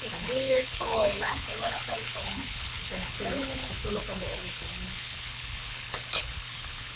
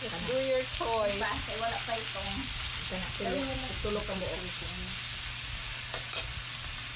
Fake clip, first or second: first